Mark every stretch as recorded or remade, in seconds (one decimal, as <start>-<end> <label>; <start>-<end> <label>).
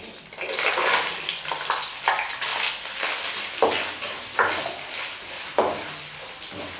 0.0-6.8 recorded